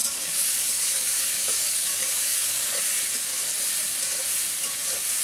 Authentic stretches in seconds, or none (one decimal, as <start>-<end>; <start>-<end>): 2.8-5.2